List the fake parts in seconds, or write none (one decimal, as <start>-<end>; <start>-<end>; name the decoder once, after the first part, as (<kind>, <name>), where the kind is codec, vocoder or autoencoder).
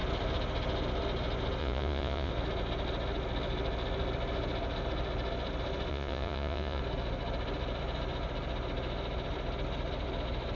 1.6-2.3 (vocoder, Vocos); 5.9-6.8